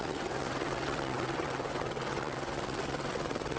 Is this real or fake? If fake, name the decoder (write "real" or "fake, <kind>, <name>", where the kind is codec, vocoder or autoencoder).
fake, vocoder, WaveNeXt